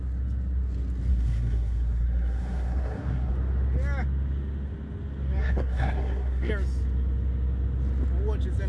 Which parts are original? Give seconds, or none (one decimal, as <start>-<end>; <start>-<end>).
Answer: 0.0-1.1; 3.3-5.4; 6.5-8.7